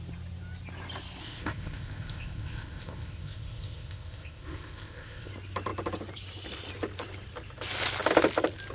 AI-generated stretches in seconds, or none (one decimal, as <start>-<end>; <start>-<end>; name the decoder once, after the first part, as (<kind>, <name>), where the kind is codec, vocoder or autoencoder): 1.2-5.3 (codec, ZipCodec)